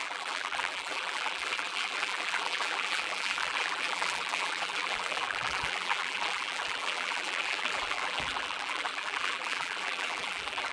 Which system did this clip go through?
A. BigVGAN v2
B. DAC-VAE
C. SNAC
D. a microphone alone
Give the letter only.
A